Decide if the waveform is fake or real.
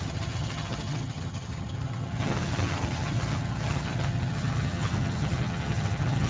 fake